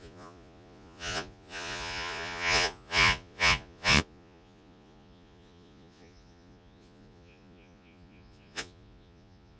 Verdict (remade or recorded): remade